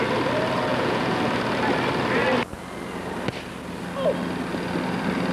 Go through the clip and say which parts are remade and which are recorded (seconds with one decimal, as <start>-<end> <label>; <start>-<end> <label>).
0.0-0.7 recorded; 0.7-1.2 remade; 1.2-5.3 recorded